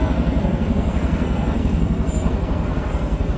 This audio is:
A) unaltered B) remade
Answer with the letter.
B